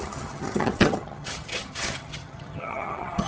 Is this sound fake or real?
fake